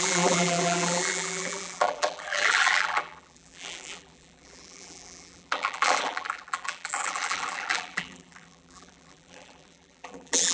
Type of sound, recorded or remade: remade